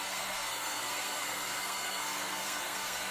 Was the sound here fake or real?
fake